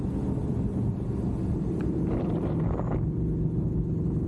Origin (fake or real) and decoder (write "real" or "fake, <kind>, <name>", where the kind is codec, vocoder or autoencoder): real